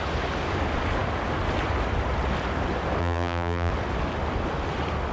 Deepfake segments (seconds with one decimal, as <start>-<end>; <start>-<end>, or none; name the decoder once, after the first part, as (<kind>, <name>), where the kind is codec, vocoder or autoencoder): 3.0-3.7 (vocoder, BigVGAN v2)